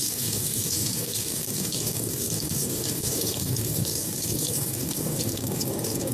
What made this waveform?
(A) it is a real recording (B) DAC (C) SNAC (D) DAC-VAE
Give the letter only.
B